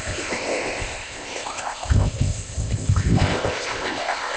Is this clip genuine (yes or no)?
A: no